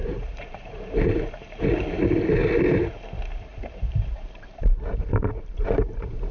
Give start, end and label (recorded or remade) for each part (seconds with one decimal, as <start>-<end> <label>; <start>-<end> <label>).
0.0-1.6 remade; 1.6-3.5 recorded; 3.5-6.3 remade